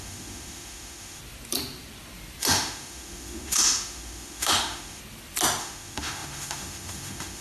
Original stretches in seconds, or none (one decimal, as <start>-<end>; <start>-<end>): 1.2-2.4; 5.0-5.6